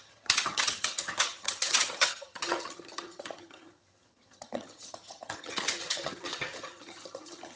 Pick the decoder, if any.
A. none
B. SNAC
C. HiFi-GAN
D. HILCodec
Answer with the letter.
C